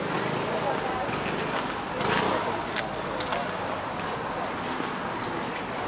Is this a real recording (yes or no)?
yes